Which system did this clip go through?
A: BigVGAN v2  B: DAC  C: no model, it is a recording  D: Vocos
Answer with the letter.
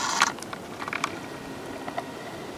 C